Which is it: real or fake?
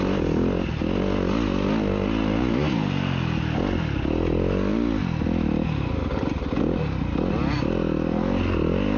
real